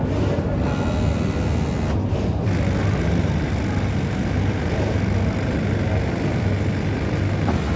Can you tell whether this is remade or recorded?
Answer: recorded